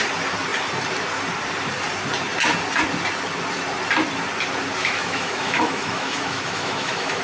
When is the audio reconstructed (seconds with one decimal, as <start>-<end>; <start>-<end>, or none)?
4.8-7.2